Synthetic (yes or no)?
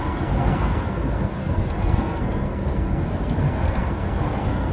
yes